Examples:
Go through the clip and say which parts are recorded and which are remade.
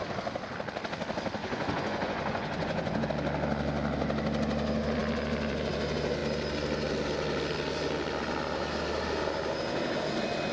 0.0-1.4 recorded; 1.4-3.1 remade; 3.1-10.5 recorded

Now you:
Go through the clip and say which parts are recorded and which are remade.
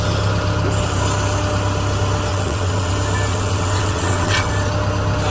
0.0-2.3 recorded; 2.3-2.9 remade; 2.9-3.3 recorded; 3.3-4.5 remade; 4.5-5.3 recorded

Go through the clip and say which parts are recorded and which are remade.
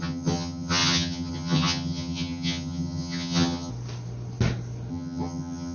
0.0-3.7 remade; 3.7-4.9 recorded; 4.9-5.7 remade